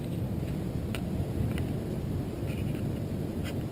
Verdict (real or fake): fake